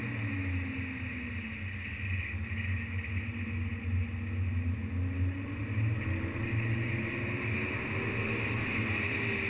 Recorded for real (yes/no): yes